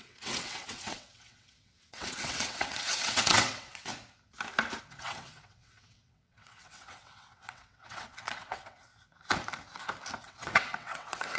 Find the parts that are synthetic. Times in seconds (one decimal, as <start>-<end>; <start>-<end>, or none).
0.0-3.9; 4.8-8.9; 10.2-11.4